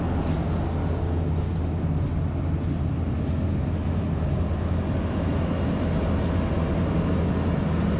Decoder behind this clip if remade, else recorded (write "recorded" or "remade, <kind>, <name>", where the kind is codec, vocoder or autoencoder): recorded